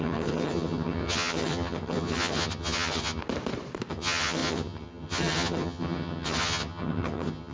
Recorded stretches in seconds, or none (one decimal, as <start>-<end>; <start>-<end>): 3.2-3.9